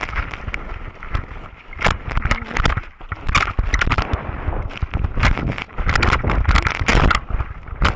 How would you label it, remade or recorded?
recorded